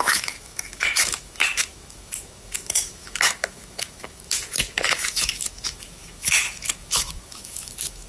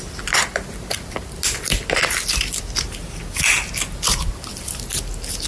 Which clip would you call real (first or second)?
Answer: second